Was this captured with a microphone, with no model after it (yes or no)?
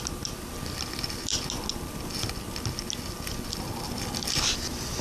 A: yes